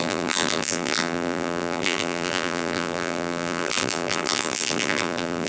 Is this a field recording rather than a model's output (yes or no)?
no